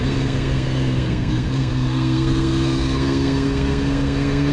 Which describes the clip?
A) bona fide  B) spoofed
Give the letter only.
B